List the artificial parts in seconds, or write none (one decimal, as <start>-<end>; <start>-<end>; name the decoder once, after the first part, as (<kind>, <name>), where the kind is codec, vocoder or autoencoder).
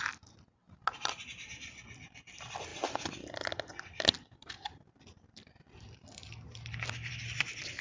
none